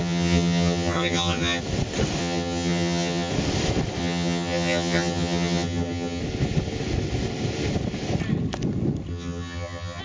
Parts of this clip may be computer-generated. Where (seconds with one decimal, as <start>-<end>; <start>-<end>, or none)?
0.0-1.6; 2.2-3.3; 4.0-6.2; 9.1-10.0